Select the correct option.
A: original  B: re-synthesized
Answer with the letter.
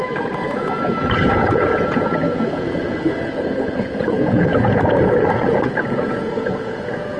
B